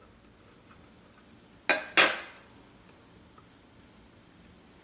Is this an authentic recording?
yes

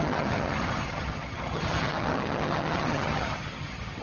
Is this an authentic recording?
no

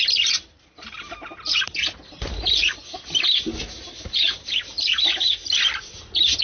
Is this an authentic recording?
yes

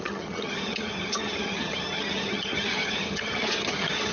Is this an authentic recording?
no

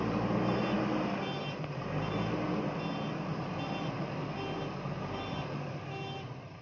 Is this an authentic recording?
yes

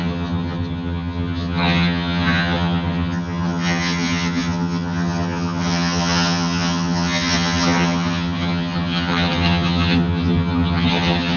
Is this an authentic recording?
no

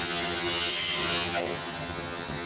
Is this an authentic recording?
no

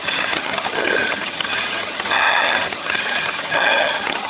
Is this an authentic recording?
no